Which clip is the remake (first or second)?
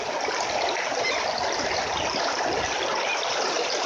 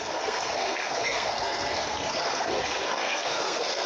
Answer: second